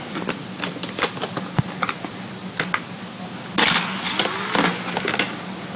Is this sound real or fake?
real